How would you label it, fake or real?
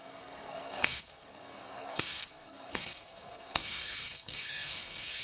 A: fake